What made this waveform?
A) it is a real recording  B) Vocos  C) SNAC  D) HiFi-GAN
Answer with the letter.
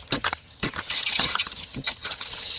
D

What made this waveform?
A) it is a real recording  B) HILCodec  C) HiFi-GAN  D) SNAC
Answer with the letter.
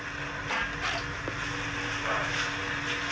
A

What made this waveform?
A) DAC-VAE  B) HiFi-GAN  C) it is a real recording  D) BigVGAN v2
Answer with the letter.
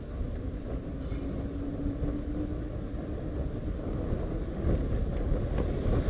C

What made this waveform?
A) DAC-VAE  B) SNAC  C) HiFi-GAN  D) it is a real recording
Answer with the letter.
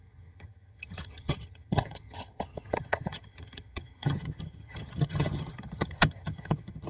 C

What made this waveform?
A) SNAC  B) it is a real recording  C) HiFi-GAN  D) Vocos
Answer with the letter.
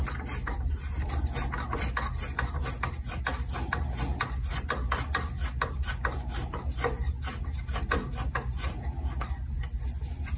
B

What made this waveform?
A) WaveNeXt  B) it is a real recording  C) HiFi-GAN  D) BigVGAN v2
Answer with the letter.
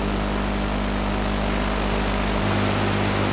B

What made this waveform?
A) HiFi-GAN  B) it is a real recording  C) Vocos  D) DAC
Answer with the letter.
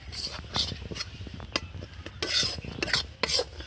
B